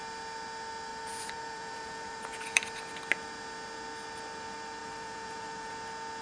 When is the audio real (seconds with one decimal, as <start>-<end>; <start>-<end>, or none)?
0.0-0.9; 2.7-4.8; 5.7-6.2